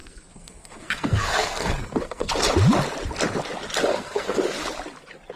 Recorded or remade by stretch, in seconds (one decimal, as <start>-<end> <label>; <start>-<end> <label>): 0.0-2.3 remade; 2.3-3.9 recorded; 3.9-4.4 remade; 4.4-5.4 recorded